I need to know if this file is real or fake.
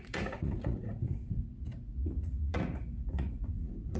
fake